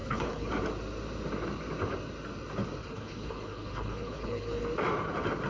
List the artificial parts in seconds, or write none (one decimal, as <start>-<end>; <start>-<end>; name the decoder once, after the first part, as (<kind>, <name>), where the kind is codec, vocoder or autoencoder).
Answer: 0.0-0.5 (codec, HILCodec); 2.8-4.6